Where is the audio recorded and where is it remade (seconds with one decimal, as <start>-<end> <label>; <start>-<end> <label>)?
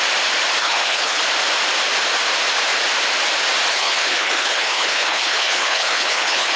0.0-0.6 recorded; 0.6-1.2 remade; 1.2-3.7 recorded; 3.7-6.6 remade